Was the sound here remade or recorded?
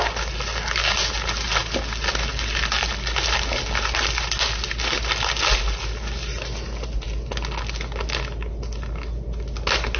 recorded